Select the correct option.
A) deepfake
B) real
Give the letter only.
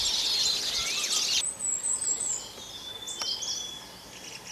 B